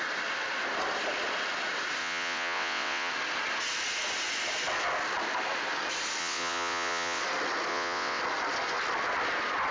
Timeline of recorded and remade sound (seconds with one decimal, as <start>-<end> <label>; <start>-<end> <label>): 0.0-2.0 recorded; 2.0-3.1 remade; 3.1-6.2 recorded; 6.2-7.2 remade; 7.2-7.7 recorded; 7.7-8.2 remade; 8.2-9.7 recorded

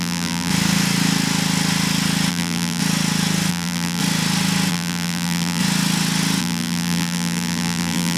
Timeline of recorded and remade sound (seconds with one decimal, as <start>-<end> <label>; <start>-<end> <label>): 0.0-0.5 remade; 0.5-2.3 recorded; 2.3-2.8 remade; 2.8-3.5 recorded; 3.5-4.0 remade; 4.0-4.7 recorded; 4.7-5.6 remade; 5.6-6.4 recorded; 6.4-8.2 remade